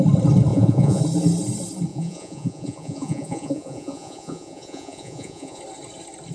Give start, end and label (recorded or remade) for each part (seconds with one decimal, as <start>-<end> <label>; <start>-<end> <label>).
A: 0.0-0.5 recorded; 0.5-1.0 remade; 1.0-1.9 recorded; 1.9-5.6 remade; 5.6-6.3 recorded